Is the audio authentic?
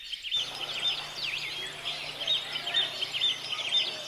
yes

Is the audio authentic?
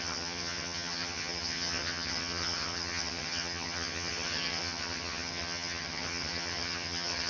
no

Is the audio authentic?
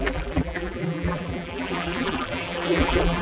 no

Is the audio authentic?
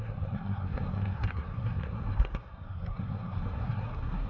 no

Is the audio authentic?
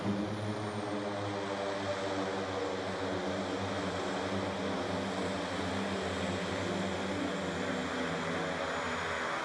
yes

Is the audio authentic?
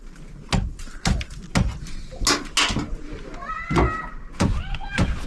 yes